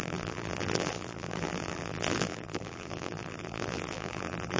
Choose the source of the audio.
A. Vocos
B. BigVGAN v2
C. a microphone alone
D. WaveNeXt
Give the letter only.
B